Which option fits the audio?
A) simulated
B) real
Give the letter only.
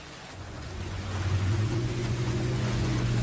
A